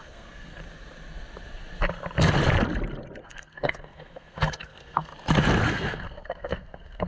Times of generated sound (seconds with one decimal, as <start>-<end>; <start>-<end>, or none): 0.0-0.6; 3.2-5.1; 5.7-7.1